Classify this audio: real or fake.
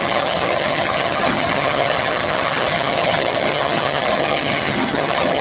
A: fake